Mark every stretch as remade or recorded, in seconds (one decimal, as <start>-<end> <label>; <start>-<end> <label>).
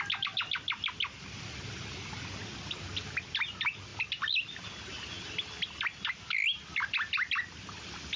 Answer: 0.0-8.2 recorded